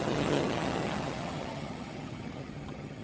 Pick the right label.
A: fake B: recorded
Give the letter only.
A